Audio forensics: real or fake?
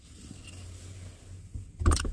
real